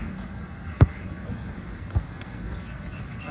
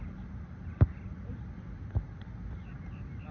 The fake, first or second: first